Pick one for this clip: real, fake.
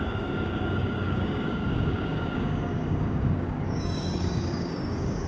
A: fake